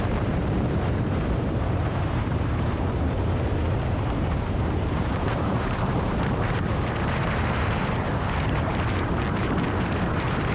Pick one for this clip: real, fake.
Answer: fake